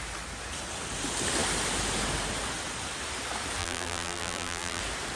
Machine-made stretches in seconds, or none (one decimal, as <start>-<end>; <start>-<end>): 3.6-4.8